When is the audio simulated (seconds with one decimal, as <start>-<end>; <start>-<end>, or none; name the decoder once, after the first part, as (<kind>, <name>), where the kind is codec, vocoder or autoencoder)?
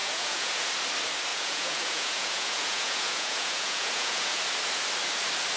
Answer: 0.0-0.7 (vocoder, Vocos); 1.3-4.4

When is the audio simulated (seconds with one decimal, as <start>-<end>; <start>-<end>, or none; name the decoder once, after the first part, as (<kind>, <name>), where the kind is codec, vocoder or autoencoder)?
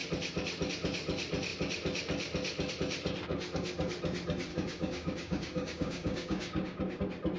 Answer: 4.5-7.0 (codec, DAC)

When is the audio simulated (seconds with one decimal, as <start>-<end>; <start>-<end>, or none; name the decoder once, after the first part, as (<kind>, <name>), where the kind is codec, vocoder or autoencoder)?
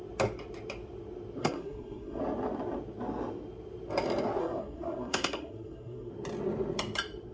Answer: 1.4-2.2 (codec, SNAC); 4.4-6.1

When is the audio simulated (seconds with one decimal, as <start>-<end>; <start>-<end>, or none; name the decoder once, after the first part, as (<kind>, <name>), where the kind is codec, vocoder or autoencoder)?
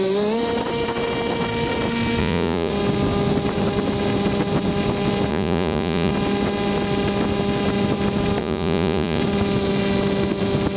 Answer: 2.2-2.7 (vocoder, Vocos); 5.3-6.1; 8.4-9.2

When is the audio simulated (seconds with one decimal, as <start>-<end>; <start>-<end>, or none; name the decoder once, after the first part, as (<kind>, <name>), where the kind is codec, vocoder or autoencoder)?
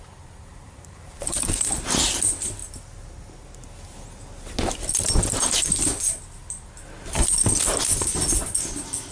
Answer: 0.5-1.7 (vocoder, BigVGAN v2)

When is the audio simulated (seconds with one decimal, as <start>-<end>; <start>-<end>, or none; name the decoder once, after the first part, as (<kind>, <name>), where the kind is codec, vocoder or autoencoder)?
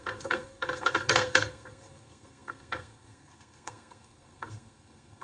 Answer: 0.0-5.2 (codec, SNAC)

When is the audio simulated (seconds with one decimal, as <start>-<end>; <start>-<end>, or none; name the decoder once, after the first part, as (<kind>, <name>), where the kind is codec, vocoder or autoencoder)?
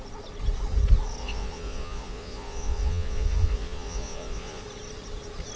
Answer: 1.2-4.6 (vocoder, Vocos)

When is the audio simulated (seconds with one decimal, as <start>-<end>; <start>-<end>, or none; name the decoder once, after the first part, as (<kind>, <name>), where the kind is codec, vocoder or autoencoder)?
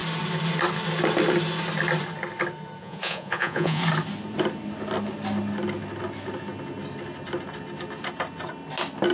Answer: 2.8-3.8 (vocoder, Vocos)